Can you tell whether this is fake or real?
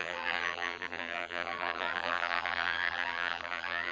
fake